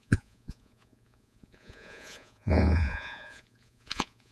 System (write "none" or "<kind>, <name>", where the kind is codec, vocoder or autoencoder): vocoder, Vocos